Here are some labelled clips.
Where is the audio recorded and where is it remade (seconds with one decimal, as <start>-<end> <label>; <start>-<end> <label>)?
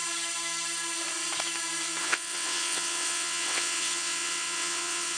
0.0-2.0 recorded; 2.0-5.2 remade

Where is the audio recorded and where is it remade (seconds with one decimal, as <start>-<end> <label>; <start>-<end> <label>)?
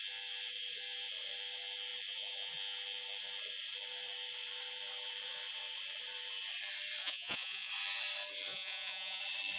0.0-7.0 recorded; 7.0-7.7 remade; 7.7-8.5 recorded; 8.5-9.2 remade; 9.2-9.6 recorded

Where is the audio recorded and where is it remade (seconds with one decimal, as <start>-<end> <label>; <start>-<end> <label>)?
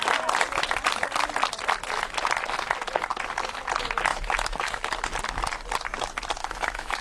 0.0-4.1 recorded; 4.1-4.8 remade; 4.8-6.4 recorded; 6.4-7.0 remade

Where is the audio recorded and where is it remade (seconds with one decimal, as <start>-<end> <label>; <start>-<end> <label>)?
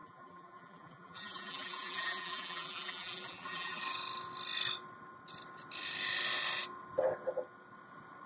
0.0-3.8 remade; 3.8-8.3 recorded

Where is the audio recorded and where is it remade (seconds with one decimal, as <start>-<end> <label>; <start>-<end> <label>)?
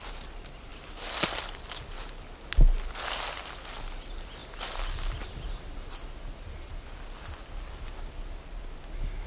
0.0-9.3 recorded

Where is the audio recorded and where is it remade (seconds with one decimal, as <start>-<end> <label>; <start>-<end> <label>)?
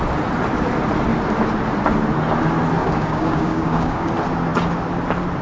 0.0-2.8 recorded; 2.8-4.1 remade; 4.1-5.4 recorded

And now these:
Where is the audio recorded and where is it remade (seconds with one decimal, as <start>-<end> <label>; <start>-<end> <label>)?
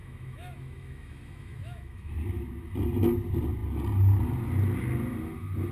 0.0-2.1 remade; 2.1-5.7 recorded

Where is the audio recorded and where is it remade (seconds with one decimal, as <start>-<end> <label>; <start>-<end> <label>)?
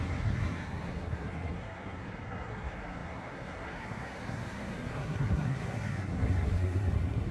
0.0-7.3 remade